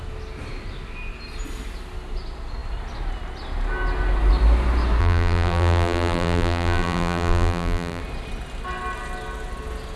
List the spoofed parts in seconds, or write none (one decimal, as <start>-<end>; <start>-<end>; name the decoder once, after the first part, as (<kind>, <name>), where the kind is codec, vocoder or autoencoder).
5.0-8.0 (vocoder, BigVGAN v2)

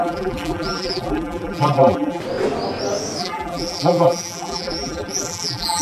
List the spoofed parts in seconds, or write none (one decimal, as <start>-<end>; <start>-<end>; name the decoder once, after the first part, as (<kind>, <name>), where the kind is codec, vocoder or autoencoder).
0.0-2.2 (vocoder, BigVGAN v2); 3.2-5.8

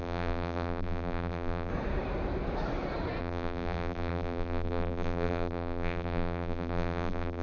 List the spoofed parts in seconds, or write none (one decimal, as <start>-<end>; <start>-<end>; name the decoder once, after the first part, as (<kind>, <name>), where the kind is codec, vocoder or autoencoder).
0.0-1.7 (vocoder, BigVGAN v2); 3.2-7.4

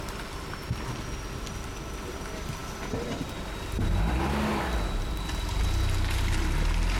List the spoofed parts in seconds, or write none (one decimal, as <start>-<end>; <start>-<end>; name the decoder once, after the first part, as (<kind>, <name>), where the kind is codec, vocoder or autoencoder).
none

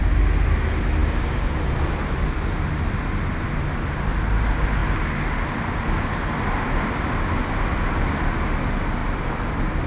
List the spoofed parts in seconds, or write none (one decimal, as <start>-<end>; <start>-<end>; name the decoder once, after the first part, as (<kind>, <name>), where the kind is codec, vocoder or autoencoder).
1.0-1.7 (vocoder, BigVGAN v2); 9.0-9.9

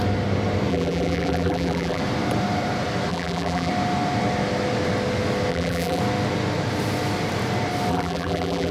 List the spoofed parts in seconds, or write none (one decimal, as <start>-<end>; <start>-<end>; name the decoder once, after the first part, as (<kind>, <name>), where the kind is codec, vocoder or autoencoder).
0.7-2.0 (vocoder, BigVGAN v2); 3.1-3.7; 5.5-6.0; 7.9-8.7